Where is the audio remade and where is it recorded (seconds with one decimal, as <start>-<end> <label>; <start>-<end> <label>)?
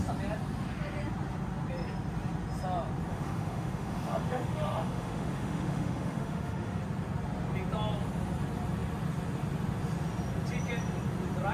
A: 0.0-3.1 recorded; 3.1-6.8 remade; 6.8-11.5 recorded